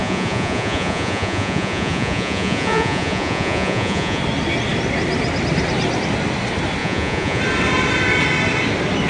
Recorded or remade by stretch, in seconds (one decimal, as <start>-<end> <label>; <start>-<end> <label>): 0.0-4.2 remade; 4.2-6.8 recorded; 6.8-7.4 remade; 7.4-9.1 recorded